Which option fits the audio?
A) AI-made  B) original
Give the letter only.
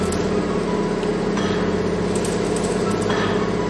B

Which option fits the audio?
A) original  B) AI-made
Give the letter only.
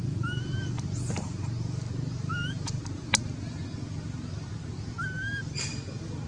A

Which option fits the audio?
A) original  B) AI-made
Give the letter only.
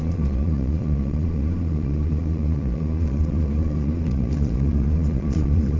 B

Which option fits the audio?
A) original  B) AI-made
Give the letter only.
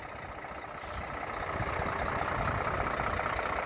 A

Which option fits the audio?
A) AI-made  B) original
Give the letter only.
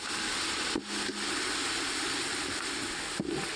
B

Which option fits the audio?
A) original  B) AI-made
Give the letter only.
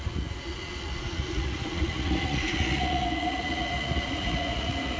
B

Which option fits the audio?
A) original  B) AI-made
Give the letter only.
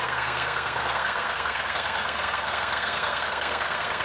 B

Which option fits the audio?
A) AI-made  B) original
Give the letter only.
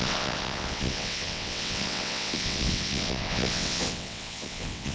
A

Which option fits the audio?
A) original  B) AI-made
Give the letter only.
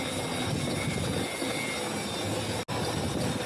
A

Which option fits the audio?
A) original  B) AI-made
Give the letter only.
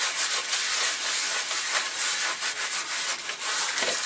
A